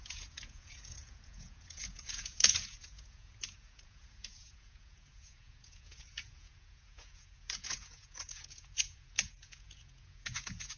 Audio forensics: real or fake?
fake